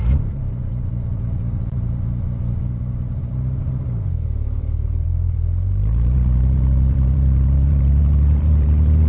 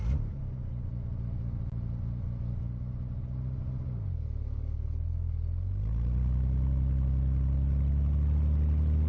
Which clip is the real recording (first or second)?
second